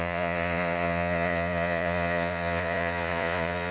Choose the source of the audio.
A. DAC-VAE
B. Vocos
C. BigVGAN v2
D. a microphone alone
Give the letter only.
B